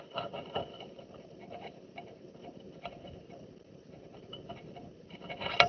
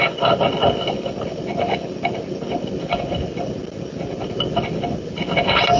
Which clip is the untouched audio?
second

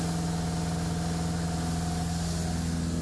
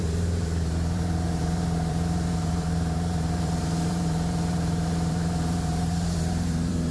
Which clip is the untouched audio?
first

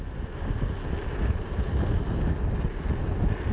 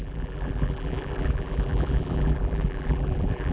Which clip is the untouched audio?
first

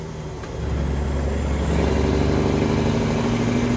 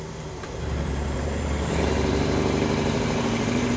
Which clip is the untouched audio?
first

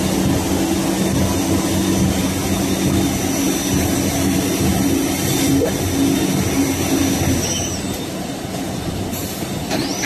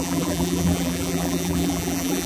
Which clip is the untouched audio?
first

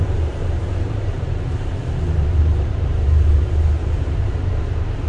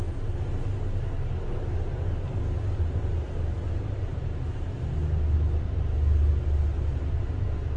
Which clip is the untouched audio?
second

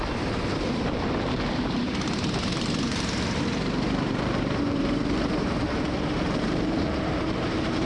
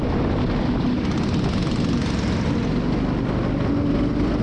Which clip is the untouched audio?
second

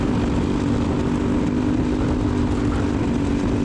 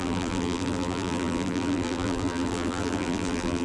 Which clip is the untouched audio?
first